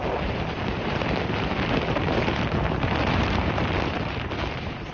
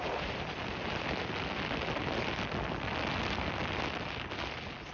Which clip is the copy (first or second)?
first